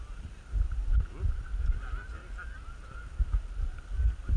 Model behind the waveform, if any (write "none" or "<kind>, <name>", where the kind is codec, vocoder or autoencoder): none